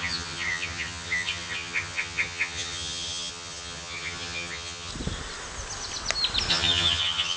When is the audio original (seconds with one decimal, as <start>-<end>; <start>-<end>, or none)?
4.9-6.5